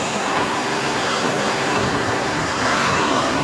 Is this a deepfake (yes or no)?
yes